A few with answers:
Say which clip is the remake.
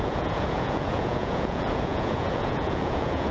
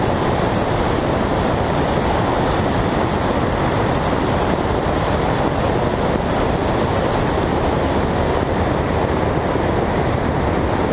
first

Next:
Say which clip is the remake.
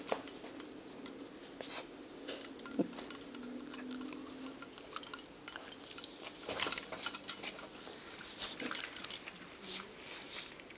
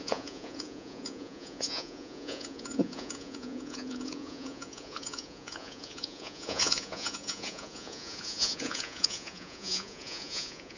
second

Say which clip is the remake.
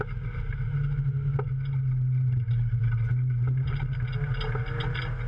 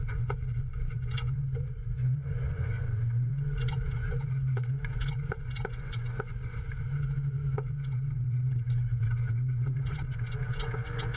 second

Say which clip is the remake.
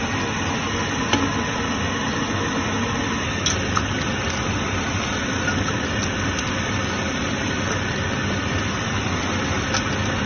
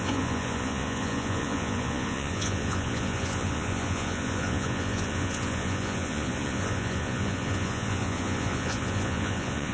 second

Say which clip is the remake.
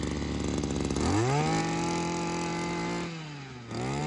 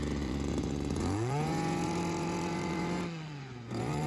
second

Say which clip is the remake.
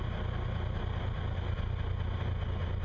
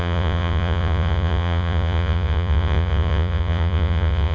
second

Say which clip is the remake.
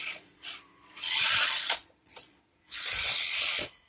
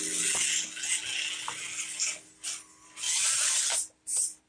first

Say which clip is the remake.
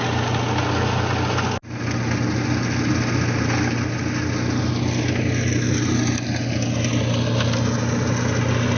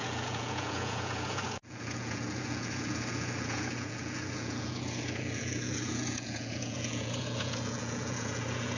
second